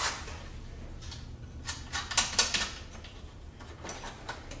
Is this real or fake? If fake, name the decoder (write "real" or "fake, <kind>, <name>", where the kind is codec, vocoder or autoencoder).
real